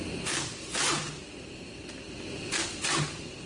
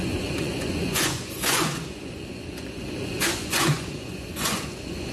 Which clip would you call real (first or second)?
first